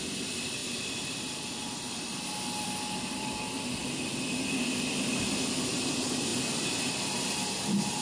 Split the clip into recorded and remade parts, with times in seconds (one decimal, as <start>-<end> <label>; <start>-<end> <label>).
0.0-0.6 remade; 0.6-2.6 recorded; 2.6-3.8 remade; 3.8-4.7 recorded; 4.7-8.0 remade